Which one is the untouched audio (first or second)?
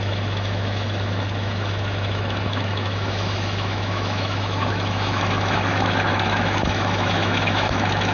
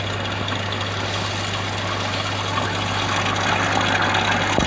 second